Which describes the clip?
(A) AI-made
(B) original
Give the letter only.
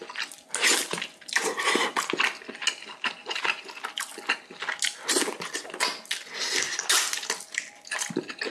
B